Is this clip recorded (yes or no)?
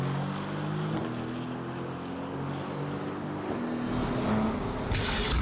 yes